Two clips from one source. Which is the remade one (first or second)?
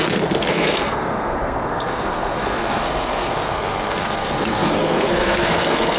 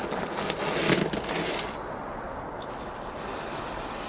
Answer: first